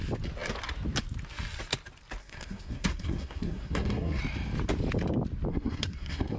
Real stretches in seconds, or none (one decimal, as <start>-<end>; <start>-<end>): 0.0-2.2; 4.2-5.5